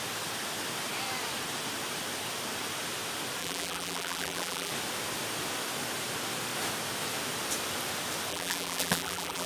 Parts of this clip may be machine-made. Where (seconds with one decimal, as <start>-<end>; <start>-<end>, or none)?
3.4-4.7; 8.3-9.5